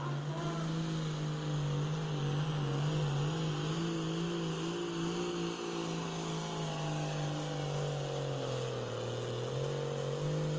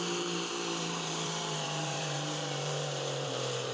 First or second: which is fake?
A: second